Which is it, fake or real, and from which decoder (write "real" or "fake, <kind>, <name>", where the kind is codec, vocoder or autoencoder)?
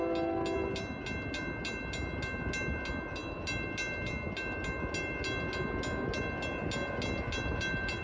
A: real